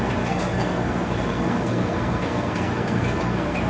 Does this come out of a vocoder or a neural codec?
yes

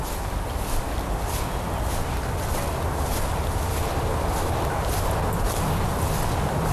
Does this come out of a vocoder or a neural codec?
no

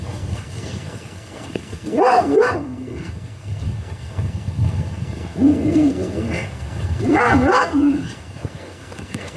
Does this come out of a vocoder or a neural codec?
yes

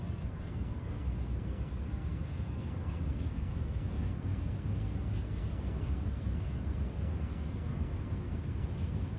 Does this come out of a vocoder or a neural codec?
yes